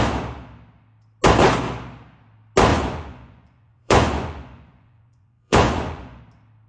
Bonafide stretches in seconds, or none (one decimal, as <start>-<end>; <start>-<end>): 0.0-2.7; 6.2-6.7